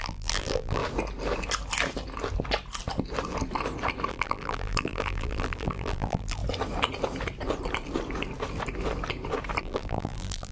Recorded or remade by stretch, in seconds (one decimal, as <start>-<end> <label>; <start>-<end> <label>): 0.0-0.8 remade; 0.8-4.1 recorded; 4.1-6.4 remade; 6.4-9.6 recorded; 9.6-10.5 remade